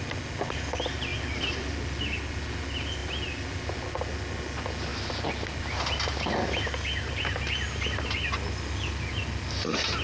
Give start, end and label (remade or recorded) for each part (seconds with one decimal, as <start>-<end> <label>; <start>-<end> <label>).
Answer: 0.0-10.0 recorded